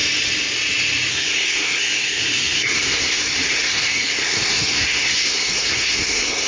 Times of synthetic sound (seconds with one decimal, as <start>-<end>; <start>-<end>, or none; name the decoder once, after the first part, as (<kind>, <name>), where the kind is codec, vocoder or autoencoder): 1.1-6.5 (codec, SNAC)

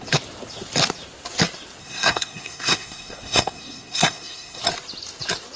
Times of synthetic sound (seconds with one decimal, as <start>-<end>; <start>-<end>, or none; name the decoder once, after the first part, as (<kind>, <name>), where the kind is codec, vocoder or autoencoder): 1.8-4.6 (codec, SNAC)

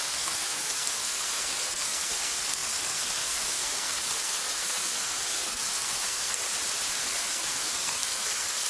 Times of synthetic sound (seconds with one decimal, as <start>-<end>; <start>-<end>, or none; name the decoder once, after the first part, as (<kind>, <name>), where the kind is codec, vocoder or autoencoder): 0.0-6.4 (codec, SNAC); 7.0-8.7

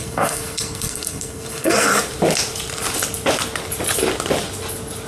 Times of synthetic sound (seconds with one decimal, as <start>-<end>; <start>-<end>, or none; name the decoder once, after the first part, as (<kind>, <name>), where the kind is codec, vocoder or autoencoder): 0.0-1.9 (codec, SNAC)

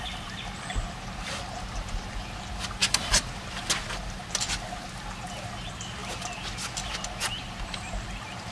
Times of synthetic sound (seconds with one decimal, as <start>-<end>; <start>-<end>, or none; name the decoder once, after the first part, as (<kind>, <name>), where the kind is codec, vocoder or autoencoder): none

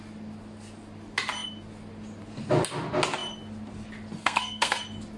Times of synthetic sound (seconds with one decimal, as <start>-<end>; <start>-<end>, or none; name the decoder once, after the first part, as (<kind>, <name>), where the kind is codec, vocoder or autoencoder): 4.2-4.8 (codec, SNAC)